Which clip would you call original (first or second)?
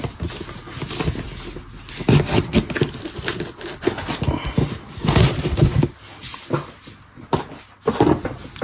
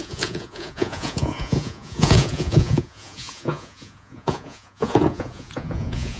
first